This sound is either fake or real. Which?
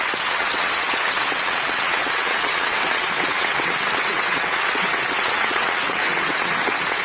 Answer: fake